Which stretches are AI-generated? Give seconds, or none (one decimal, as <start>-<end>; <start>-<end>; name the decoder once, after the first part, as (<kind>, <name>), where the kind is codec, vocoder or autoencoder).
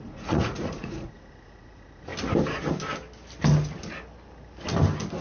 0.0-2.1 (vocoder, Vocos)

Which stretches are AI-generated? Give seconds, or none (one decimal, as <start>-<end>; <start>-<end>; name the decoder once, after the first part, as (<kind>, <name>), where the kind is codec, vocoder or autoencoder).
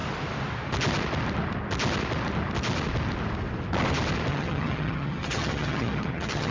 4.3-6.5 (vocoder, HiFi-GAN)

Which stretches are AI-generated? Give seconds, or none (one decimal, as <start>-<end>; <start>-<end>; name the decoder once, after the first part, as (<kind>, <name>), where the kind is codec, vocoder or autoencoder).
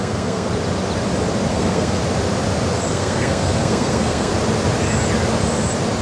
0.0-0.5 (codec, SNAC); 1.5-2.0; 2.9-4.3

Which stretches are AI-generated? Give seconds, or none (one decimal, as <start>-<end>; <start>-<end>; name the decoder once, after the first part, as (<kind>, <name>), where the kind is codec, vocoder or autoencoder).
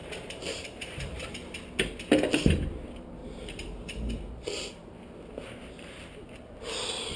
0.0-1.3 (vocoder, BigVGAN v2); 3.2-4.1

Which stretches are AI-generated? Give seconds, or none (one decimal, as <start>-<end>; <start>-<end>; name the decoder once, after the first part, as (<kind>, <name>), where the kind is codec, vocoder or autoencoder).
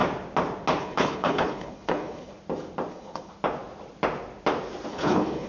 0.8-2.3 (codec, HILCodec); 2.9-3.3; 4.9-5.5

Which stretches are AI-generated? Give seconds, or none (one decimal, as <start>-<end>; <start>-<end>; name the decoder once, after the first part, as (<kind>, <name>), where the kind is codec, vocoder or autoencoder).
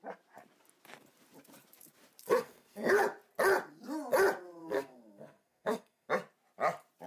2.3-2.9 (codec, SNAC); 4.6-6.1